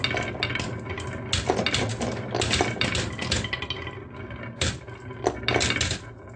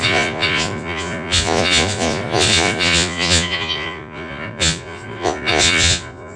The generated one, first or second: second